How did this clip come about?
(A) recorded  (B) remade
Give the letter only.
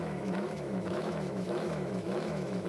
B